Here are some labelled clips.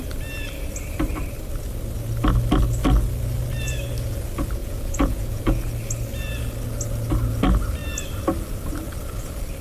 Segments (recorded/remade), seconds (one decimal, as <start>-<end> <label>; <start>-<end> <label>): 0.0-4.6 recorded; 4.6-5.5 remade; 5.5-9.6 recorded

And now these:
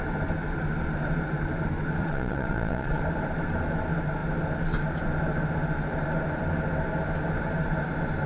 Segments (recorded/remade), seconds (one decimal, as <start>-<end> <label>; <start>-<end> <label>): 0.0-2.0 recorded; 2.0-3.0 remade; 3.0-8.3 recorded

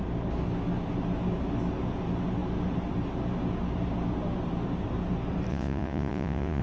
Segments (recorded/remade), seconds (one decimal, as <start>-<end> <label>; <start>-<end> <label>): 0.0-5.5 recorded; 5.5-6.6 remade